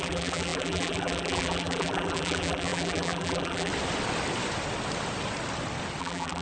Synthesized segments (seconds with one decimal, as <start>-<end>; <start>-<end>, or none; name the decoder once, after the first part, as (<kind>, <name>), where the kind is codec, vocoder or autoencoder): 0.0-3.7 (vocoder, BigVGAN v2); 6.0-6.4